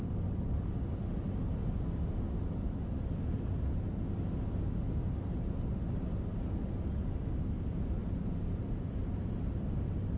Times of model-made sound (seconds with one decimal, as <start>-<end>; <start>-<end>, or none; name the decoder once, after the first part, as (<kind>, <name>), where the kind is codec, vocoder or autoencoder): none

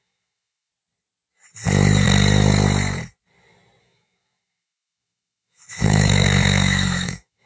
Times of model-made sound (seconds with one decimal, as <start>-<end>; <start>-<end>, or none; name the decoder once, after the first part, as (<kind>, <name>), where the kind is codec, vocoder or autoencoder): 0.0-0.7 (autoencoder, DAC-VAE); 3.8-7.5